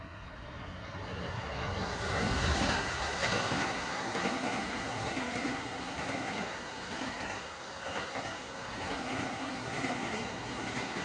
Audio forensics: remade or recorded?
remade